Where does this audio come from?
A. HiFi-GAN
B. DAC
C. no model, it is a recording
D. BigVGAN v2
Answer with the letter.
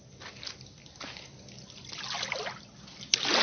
C